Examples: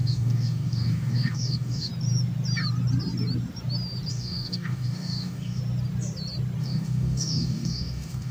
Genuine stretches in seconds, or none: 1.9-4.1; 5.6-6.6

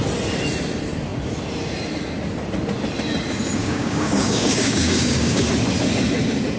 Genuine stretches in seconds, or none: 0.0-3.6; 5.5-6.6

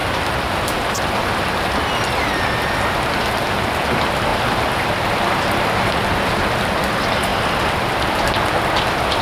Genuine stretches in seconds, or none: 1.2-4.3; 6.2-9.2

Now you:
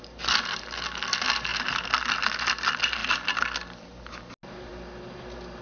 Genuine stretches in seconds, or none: 0.0-5.6

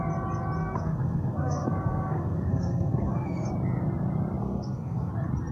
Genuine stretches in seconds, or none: 0.0-0.6; 3.5-4.4; 5.1-5.5